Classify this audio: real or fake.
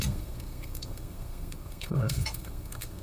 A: fake